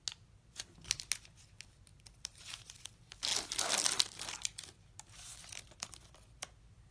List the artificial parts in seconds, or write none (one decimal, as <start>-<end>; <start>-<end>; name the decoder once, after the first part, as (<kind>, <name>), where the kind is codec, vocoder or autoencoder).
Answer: none